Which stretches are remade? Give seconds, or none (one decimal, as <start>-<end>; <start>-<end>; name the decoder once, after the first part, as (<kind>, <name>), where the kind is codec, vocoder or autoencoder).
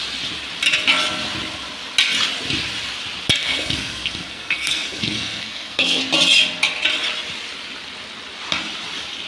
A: 3.4-6.0 (codec, SNAC)